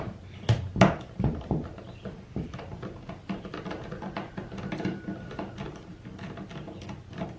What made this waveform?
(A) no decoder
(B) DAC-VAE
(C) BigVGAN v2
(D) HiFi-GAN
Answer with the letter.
A